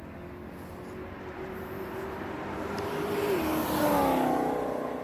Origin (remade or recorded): recorded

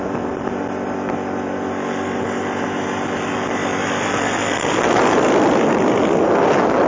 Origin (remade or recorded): recorded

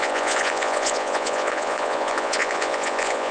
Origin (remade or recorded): remade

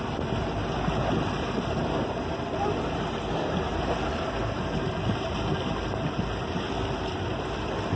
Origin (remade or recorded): recorded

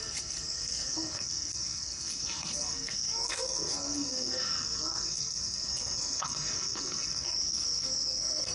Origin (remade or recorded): remade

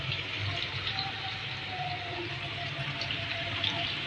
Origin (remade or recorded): remade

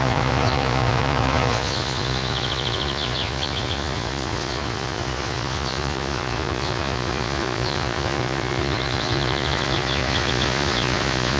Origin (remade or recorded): remade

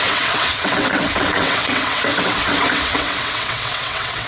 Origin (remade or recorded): remade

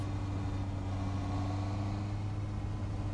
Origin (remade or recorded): recorded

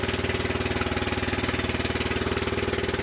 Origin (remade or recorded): recorded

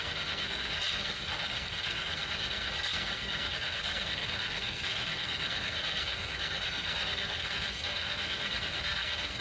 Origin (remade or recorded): remade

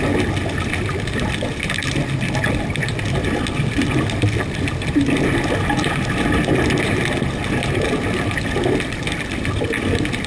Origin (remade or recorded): recorded